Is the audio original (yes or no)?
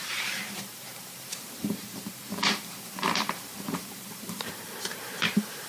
no